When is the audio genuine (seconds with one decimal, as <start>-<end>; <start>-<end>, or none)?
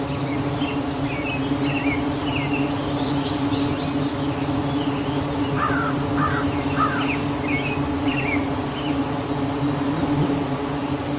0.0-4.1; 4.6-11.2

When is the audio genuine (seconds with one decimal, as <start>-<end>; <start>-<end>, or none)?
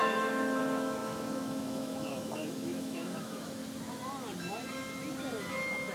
3.6-5.5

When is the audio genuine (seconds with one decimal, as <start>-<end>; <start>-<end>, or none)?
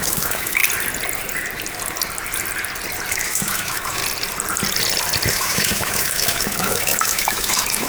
0.6-3.1; 4.0-5.3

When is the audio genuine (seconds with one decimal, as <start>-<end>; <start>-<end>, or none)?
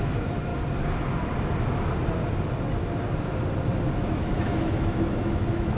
0.5-4.0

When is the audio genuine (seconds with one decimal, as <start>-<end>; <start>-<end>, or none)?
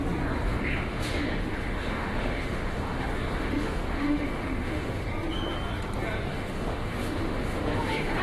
0.0-0.5; 5.1-6.3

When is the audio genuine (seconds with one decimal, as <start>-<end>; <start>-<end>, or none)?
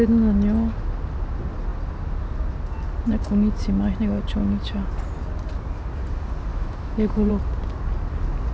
0.0-6.5; 7.3-8.5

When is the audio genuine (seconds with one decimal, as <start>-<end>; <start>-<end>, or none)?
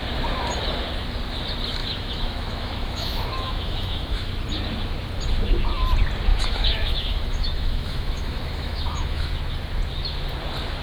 0.0-1.8; 4.3-6.3; 9.3-10.8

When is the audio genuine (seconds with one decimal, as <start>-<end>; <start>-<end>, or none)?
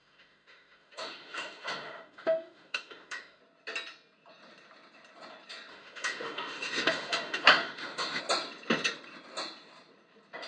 3.4-5.7; 8.2-10.5